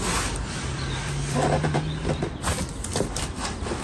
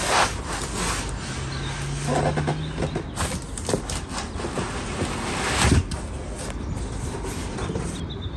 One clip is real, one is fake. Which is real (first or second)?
second